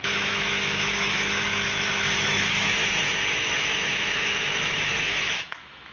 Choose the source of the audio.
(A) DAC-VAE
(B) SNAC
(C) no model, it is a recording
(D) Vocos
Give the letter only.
A